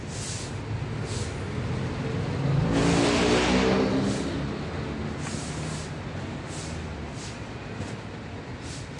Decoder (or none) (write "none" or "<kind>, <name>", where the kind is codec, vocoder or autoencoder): none